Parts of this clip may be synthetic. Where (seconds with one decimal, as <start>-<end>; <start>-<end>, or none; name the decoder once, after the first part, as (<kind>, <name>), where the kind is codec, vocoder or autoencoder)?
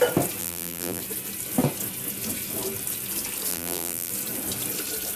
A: 0.4-1.0 (vocoder, BigVGAN v2); 3.5-4.1